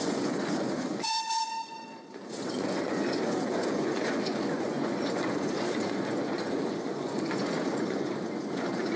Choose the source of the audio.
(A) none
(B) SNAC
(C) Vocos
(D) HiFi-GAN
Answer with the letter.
C